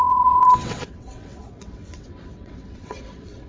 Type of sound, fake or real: fake